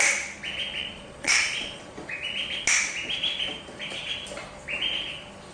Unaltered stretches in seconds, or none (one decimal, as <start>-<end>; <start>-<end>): 0.0-0.8; 1.8-5.5